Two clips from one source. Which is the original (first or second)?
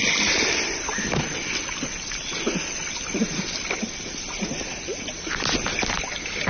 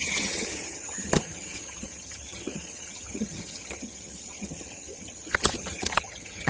first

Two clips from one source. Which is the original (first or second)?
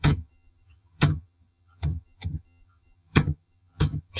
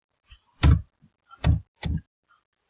second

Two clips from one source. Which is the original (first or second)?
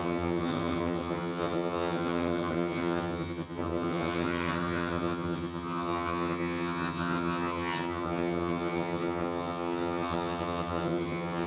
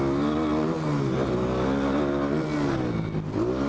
second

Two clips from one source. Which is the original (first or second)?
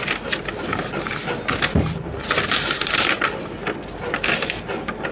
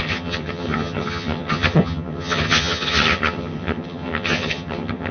first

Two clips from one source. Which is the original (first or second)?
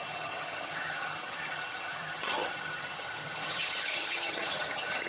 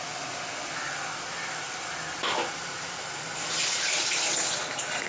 second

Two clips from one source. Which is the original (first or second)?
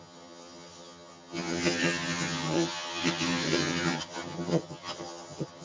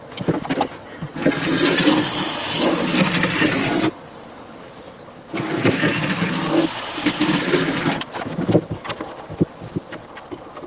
second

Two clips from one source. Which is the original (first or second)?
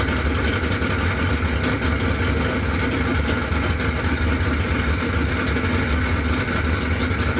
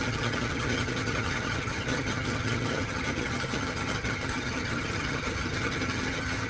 first